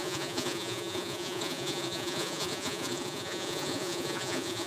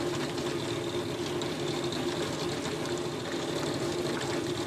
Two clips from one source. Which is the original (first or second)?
second